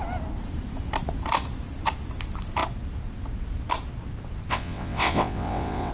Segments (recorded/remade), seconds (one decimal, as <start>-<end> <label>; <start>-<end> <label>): 0.0-4.5 recorded; 4.5-5.9 remade